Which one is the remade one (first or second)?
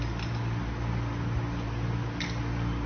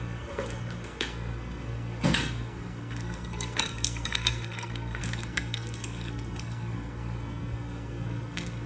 second